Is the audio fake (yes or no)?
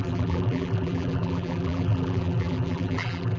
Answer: yes